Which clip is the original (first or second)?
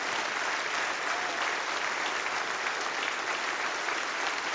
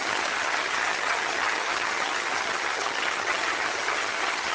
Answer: first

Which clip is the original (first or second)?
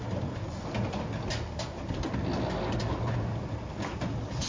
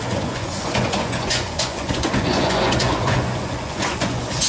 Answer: first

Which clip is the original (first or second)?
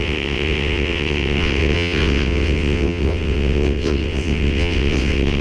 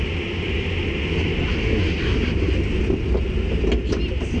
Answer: second